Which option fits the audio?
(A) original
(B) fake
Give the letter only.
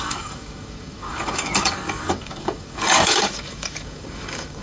B